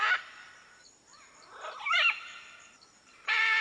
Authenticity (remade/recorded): recorded